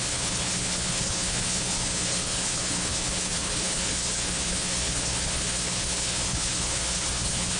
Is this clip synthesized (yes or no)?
yes